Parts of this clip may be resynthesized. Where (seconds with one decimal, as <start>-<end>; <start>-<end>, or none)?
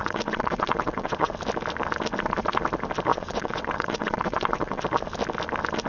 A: 0.0-1.3; 3.1-4.8